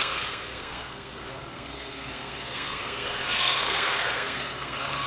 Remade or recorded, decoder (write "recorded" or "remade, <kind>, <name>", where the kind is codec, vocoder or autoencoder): remade, codec, SNAC